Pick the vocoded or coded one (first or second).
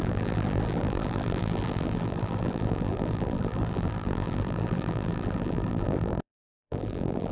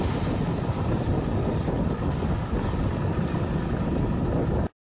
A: first